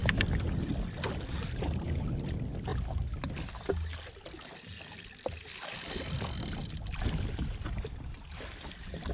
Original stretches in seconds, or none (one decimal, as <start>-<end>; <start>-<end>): 0.0-9.1